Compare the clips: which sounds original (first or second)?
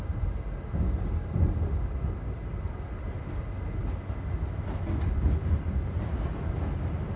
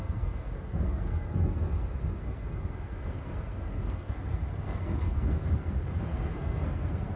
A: first